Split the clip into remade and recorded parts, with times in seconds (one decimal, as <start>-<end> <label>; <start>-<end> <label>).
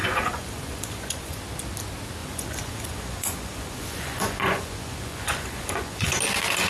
0.0-1.4 remade; 1.4-2.2 recorded; 2.2-6.2 remade; 6.2-6.7 recorded